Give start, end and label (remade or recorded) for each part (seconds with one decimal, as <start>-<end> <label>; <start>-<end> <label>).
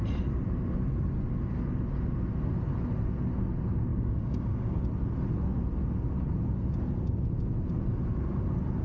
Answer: 0.0-3.9 recorded; 3.9-4.8 remade; 4.8-8.8 recorded